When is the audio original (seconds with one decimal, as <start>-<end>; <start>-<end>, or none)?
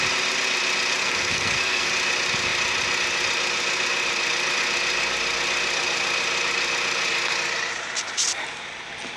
0.0-1.0; 1.9-9.2